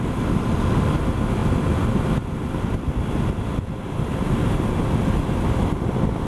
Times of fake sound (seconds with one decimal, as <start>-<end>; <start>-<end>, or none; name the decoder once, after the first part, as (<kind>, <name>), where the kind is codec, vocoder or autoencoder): none